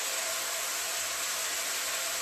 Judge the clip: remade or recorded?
recorded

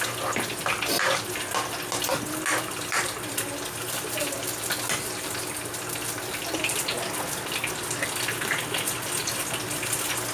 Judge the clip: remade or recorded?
recorded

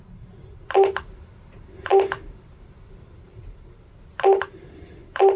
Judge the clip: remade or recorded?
recorded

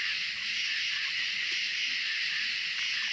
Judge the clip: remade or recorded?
recorded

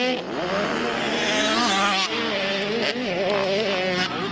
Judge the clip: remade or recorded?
recorded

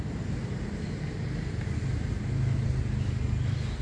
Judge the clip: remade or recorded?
recorded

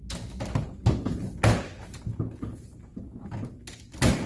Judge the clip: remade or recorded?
recorded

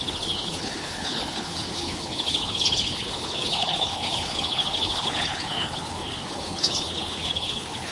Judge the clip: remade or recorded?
remade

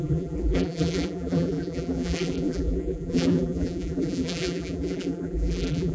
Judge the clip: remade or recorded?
remade